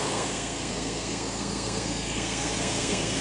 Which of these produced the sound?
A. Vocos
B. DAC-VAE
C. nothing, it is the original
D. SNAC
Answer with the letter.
D